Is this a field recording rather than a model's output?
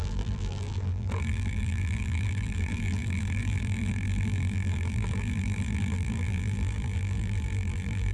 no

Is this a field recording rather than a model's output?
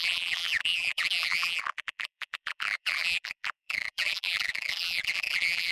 no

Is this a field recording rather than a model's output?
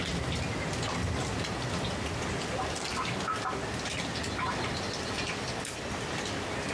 yes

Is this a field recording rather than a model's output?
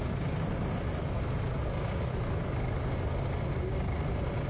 yes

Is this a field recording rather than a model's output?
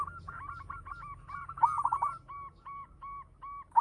no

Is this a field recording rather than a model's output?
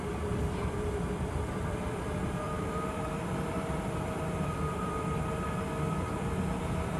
no